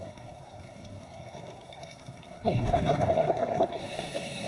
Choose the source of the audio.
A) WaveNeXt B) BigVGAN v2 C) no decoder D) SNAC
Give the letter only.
D